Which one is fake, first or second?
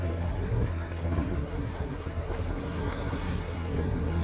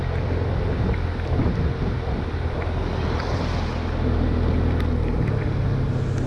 first